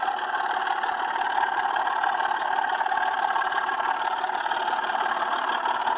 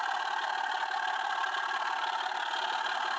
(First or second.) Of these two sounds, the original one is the second